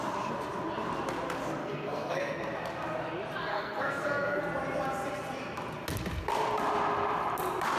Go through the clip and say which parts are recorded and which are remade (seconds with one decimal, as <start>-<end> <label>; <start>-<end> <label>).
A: 0.0-1.6 recorded; 1.6-2.4 remade; 2.4-3.5 recorded; 3.5-4.4 remade; 4.4-7.8 recorded